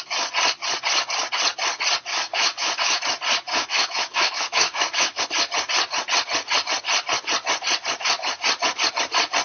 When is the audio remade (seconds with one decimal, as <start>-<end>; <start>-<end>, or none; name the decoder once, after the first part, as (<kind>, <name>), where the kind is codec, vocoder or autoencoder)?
2.1-3.0 (autoencoder, DAC-VAE); 3.5-5.2